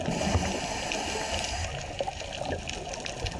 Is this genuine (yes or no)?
yes